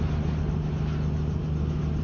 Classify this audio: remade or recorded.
recorded